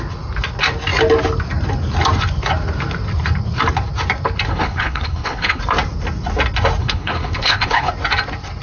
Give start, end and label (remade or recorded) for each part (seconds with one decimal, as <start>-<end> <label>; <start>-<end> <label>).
0.0-4.5 recorded; 4.5-5.6 remade; 5.6-6.8 recorded; 6.8-7.9 remade; 7.9-8.6 recorded